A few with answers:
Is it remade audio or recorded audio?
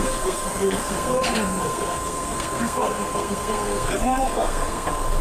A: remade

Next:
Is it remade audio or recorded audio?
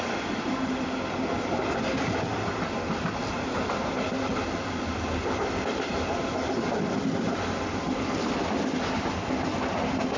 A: recorded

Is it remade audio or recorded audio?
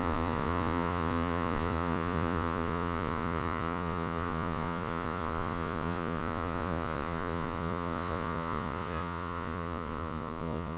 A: remade